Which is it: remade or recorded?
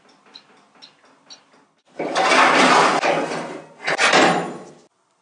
recorded